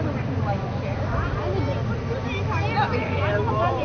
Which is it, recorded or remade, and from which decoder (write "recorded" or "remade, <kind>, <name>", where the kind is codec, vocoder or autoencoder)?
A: recorded